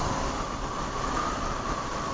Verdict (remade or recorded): remade